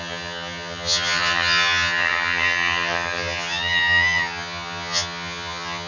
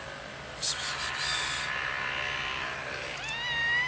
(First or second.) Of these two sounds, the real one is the second